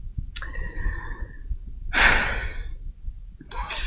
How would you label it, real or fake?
real